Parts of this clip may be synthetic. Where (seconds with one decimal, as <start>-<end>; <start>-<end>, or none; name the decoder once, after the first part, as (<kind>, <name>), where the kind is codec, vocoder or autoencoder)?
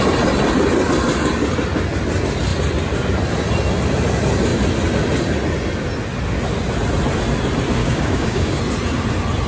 7.8-8.6 (codec, DAC)